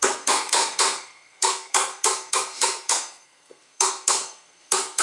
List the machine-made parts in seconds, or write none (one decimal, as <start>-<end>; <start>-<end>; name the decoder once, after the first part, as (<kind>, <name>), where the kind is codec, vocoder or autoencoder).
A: 0.0-5.0 (codec, SNAC)